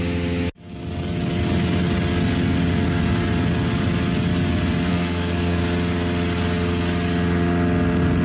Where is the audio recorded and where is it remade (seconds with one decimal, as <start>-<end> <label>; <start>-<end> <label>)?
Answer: 0.0-4.9 recorded; 4.9-5.6 remade; 5.6-8.2 recorded